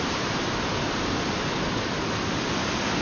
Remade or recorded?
recorded